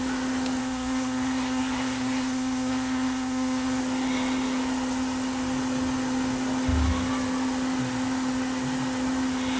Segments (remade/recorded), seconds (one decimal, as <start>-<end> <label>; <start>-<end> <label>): 0.0-0.6 recorded; 0.6-3.8 remade; 3.8-9.6 recorded